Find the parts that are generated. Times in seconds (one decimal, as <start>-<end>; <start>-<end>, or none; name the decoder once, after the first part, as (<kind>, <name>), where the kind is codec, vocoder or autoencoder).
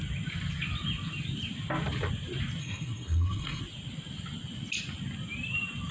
2.6-3.6 (codec, SNAC)